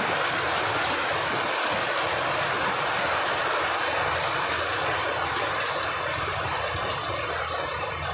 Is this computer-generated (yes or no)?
no